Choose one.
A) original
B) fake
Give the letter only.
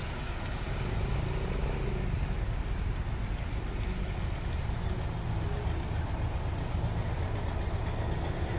A